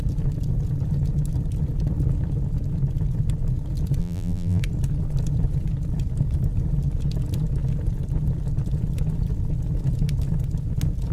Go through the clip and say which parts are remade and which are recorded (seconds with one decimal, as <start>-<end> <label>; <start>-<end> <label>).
0.0-4.0 recorded; 4.0-4.6 remade; 4.6-11.1 recorded